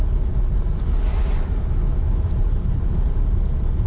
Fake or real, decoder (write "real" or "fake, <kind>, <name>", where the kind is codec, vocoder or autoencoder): real